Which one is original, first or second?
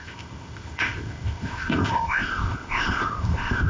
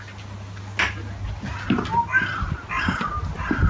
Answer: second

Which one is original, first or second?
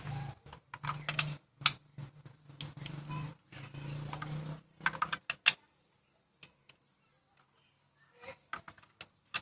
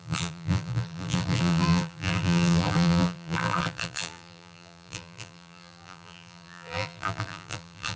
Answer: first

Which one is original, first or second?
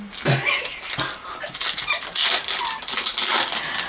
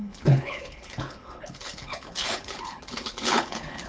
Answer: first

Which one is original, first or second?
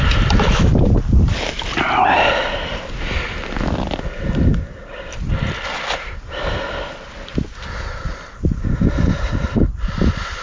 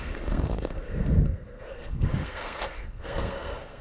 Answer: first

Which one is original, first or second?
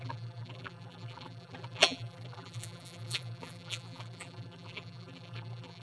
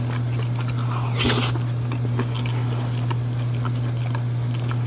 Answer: second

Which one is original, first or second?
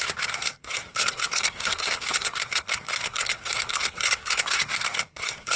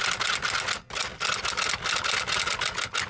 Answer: second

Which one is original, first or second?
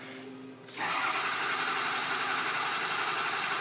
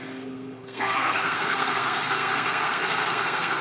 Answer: first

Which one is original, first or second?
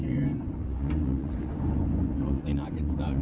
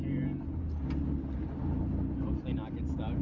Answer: second